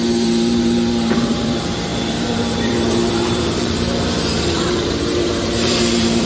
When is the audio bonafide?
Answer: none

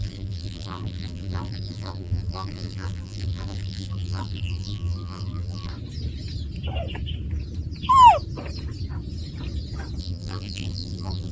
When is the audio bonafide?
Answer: 5.7-10.0

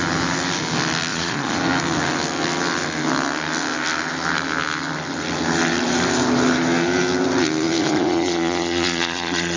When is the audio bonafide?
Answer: 0.0-1.1; 1.6-7.8